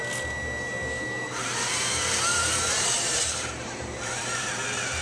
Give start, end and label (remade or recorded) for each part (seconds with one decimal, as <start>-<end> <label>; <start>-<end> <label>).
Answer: 0.0-2.3 recorded; 2.3-4.5 remade; 4.5-5.0 recorded